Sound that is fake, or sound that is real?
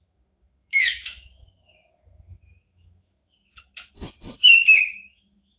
fake